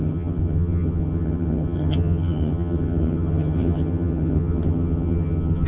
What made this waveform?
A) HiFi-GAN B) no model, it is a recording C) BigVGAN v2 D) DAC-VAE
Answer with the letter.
A